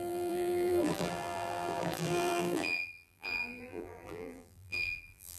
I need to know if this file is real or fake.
fake